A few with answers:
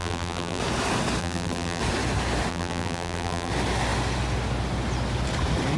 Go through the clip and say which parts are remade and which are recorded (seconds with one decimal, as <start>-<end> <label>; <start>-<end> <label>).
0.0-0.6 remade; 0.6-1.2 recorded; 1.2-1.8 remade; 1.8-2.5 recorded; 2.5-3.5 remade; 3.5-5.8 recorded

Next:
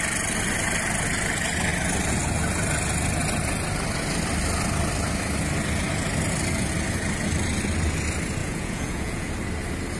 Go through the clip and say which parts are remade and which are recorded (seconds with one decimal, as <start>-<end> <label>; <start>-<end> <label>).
0.0-8.4 recorded; 8.4-9.3 remade; 9.3-10.0 recorded

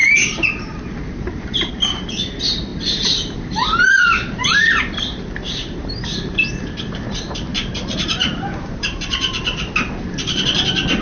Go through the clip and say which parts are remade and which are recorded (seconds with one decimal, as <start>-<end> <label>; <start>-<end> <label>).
0.0-1.7 remade; 1.7-2.7 recorded; 2.7-5.9 remade; 5.9-7.5 recorded; 7.5-9.4 remade; 9.4-11.0 recorded